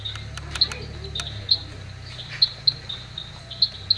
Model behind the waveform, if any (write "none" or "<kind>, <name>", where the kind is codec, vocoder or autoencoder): none